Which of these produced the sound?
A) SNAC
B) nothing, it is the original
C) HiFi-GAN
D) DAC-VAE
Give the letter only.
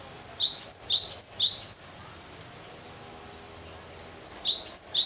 B